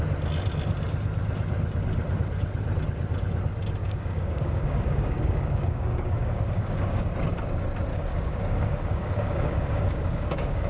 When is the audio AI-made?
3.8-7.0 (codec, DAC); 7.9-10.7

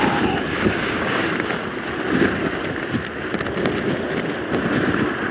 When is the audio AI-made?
0.5-1.3 (codec, DAC)